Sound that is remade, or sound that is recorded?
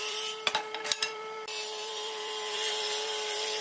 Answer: remade